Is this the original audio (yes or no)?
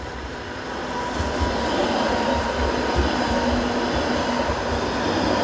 yes